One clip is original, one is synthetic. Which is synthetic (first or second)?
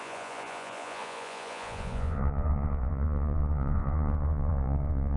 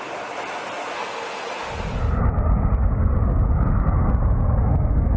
first